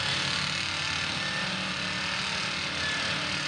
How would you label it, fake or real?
real